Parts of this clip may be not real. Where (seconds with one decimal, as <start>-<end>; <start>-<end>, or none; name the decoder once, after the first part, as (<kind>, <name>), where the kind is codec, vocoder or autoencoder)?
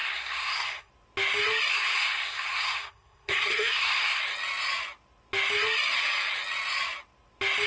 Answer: 0.0-0.9 (codec, SNAC); 1.7-4.2